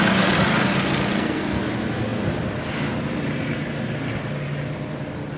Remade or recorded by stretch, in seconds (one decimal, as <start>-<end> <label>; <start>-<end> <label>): 0.0-0.7 recorded; 0.7-1.6 remade; 1.6-5.4 recorded